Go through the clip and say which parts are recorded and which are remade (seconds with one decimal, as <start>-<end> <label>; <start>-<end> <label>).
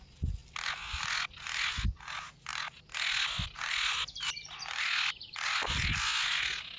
0.0-6.8 recorded